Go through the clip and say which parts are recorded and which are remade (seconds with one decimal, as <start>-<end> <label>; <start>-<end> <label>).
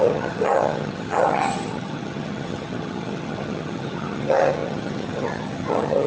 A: 0.0-6.1 remade